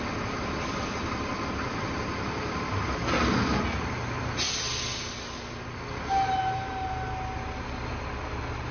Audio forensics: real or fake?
real